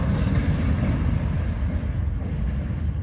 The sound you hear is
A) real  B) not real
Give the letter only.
A